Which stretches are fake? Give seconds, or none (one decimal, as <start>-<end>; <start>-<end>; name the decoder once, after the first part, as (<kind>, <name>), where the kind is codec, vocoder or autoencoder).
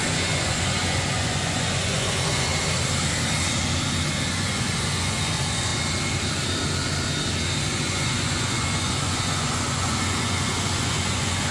0.0-2.5 (vocoder, Vocos); 4.3-5.7; 7.6-11.5